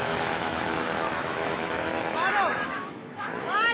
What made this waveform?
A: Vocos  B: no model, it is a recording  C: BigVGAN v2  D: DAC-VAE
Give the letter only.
D